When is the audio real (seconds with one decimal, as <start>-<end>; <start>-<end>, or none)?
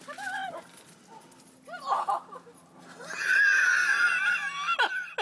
0.0-5.2